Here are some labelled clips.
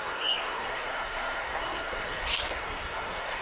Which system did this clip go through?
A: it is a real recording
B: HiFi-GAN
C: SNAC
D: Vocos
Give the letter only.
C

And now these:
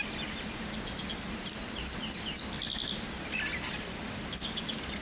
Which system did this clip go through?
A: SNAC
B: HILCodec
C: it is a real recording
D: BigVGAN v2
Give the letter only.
C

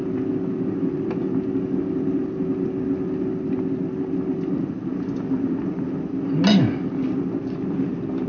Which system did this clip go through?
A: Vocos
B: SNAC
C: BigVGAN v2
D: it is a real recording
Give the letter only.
D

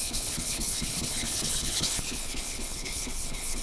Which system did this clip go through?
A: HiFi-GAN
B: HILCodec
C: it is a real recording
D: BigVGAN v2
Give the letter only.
B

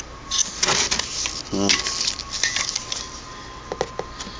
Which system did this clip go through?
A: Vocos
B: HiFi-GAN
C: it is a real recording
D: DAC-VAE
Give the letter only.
C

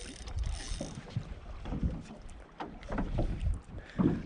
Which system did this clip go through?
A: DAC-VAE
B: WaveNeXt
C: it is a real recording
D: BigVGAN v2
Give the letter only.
D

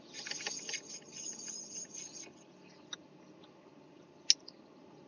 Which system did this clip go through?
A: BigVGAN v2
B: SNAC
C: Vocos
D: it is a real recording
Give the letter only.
D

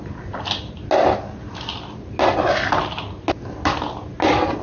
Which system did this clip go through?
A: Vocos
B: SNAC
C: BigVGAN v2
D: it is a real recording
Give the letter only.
D